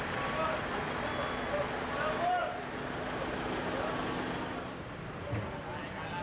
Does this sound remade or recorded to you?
recorded